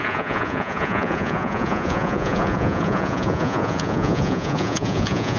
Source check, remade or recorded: remade